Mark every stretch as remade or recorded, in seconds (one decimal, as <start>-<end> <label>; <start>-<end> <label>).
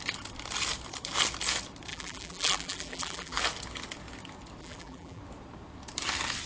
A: 0.0-1.9 recorded; 1.9-3.4 remade; 3.4-4.6 recorded; 4.6-5.2 remade; 5.2-6.5 recorded